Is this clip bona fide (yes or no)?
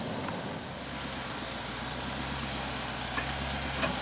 yes